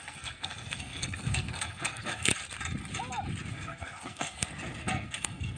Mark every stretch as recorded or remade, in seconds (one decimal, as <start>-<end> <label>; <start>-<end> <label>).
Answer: 0.0-2.3 remade; 2.3-3.5 recorded; 3.5-5.6 remade